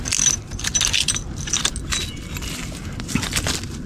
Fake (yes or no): no